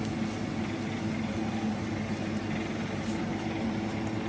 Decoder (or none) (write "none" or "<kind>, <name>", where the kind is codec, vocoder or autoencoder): none